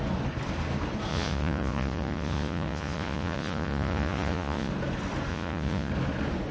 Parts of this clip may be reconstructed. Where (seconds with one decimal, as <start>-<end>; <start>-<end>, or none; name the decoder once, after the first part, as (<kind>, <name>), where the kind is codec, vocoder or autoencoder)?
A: 1.1-4.7 (vocoder, Vocos); 5.3-5.9